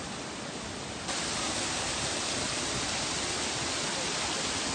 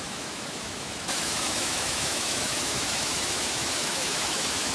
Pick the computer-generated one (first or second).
second